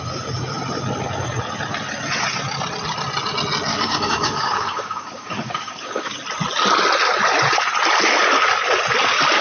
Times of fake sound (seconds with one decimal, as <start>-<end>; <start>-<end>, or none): 3.7-6.2